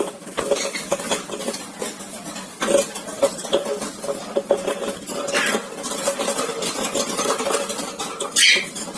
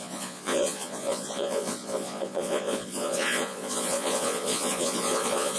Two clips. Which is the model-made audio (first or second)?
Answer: second